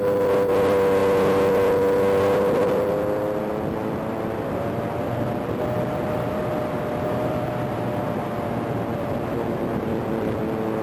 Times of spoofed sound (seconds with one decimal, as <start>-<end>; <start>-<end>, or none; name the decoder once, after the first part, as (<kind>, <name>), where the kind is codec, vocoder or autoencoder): none